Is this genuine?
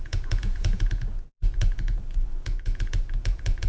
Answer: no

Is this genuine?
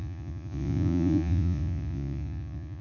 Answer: no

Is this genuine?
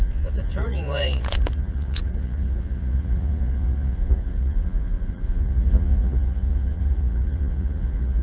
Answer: no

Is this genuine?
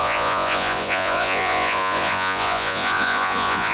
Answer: no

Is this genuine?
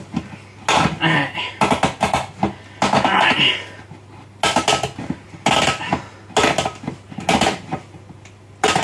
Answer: yes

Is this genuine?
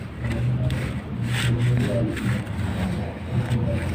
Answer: yes